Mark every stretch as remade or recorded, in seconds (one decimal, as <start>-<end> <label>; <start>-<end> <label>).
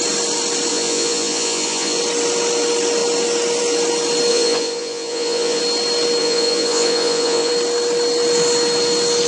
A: 0.0-0.7 recorded; 0.7-2.0 remade; 2.0-4.3 recorded; 4.3-5.6 remade; 5.6-6.2 recorded; 6.2-7.5 remade; 7.5-9.3 recorded